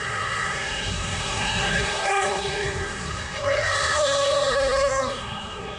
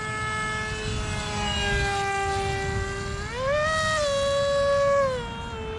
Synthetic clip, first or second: first